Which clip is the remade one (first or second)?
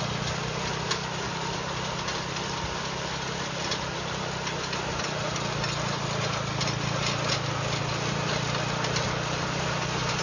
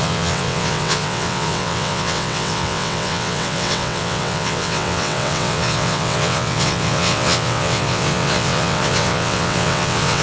second